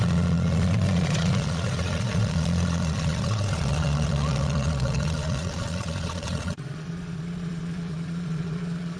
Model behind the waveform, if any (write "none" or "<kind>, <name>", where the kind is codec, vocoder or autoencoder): vocoder, Vocos